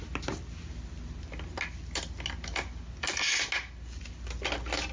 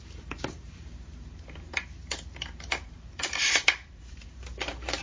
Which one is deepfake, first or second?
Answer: second